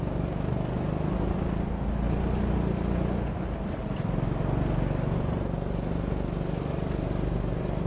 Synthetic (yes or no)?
no